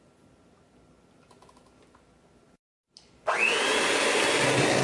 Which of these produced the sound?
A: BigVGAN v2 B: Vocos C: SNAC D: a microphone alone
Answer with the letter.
D